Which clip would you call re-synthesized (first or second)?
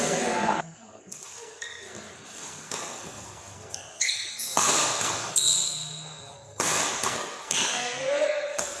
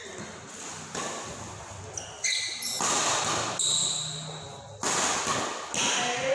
first